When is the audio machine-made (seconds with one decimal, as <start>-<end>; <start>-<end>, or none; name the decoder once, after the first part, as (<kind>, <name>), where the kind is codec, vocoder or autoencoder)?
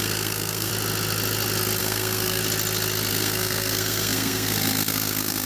0.0-0.7 (codec, SNAC); 1.8-2.4; 3.1-5.5